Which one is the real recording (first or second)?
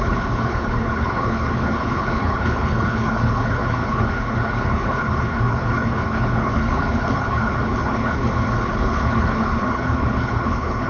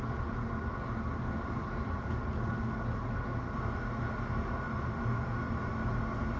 second